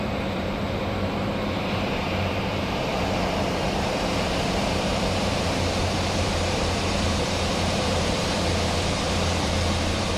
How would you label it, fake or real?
fake